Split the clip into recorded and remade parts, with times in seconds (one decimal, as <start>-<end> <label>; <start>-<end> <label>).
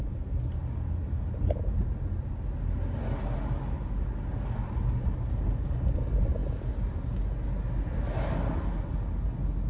0.0-9.7 recorded